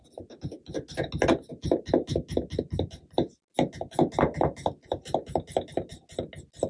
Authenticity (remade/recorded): recorded